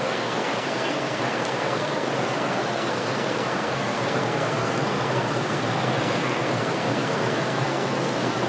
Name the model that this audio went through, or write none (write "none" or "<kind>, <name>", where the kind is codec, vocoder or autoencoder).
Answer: codec, SNAC